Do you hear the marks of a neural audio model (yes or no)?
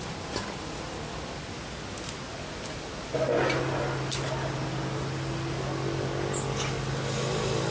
no